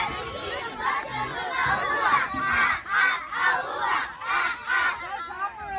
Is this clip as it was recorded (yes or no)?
yes